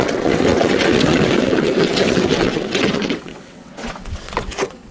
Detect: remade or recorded remade